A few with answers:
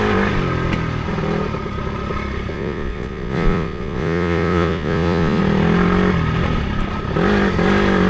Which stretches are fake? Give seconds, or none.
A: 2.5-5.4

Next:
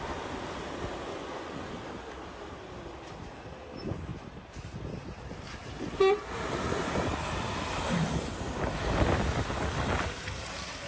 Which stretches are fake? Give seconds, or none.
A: 1.1-1.7